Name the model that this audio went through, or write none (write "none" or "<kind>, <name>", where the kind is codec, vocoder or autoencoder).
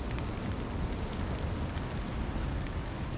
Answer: none